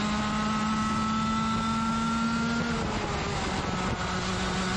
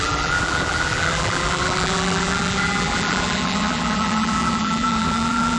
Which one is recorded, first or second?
first